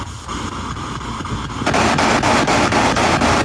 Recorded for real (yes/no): yes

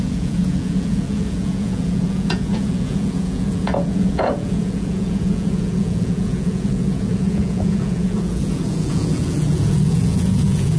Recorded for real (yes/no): no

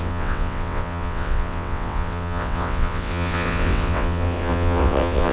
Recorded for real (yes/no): no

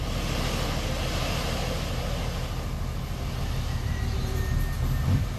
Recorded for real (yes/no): yes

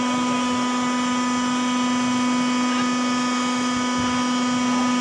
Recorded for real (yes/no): yes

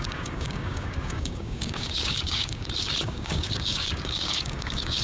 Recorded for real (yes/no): no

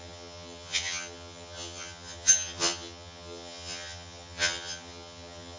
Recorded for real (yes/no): no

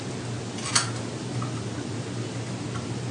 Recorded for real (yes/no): yes